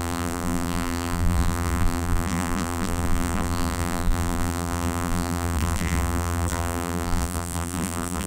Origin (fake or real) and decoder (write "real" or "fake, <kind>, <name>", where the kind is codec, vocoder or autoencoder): fake, vocoder, BigVGAN v2